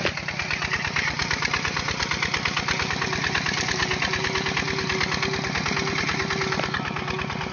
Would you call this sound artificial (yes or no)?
no